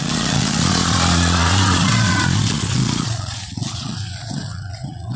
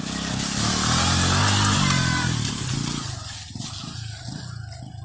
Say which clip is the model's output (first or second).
first